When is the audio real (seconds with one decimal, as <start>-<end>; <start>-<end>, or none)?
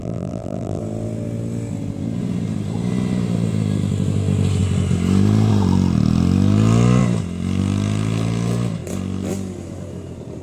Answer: 0.8-10.4